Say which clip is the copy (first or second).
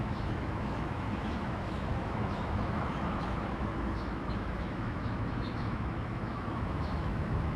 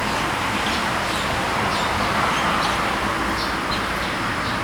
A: first